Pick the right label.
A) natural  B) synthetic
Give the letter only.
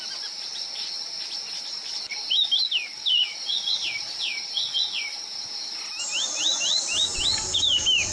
A